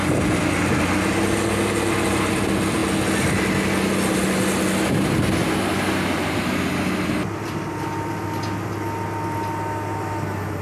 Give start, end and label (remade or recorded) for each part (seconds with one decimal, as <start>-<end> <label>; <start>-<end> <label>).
0.0-10.6 recorded